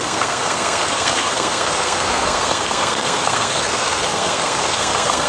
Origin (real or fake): fake